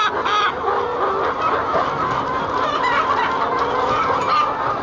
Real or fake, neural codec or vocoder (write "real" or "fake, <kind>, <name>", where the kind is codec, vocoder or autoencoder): real